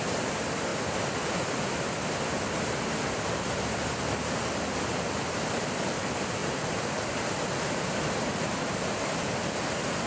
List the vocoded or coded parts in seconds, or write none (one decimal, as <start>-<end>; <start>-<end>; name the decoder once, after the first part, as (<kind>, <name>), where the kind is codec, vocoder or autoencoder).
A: 0.0-0.7 (vocoder, BigVGAN v2); 5.3-10.1